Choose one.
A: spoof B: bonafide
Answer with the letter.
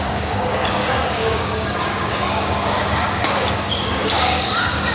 A